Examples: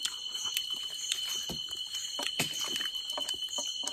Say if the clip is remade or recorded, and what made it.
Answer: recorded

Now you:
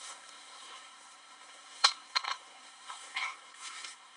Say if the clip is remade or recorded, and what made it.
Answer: remade, codec, SNAC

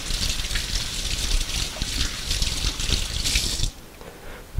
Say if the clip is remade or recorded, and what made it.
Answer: recorded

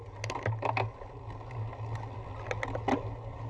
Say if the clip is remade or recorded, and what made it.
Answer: recorded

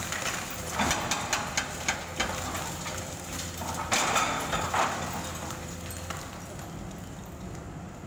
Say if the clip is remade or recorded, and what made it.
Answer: recorded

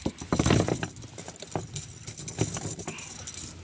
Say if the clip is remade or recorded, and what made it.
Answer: recorded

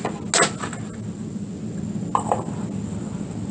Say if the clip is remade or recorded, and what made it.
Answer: recorded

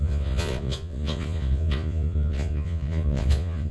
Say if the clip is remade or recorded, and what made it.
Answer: remade, vocoder, Vocos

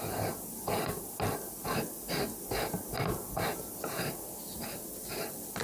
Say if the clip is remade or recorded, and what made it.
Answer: recorded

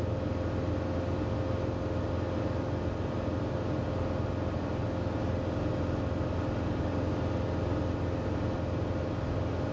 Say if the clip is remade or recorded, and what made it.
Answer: recorded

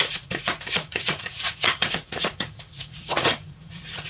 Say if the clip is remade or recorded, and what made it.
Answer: remade, vocoder, Vocos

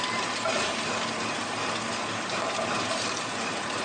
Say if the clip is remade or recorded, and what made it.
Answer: recorded